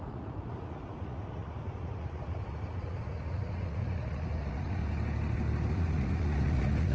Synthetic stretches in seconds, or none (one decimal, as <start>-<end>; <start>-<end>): 0.0-4.8; 5.7-6.9